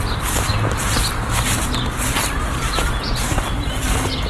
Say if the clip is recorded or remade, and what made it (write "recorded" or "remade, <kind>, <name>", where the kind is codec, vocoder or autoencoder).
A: recorded